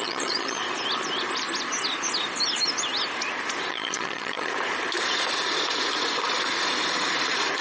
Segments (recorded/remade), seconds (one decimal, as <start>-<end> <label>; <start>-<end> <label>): 0.0-0.6 remade; 0.6-3.7 recorded; 3.7-4.5 remade; 4.5-7.6 recorded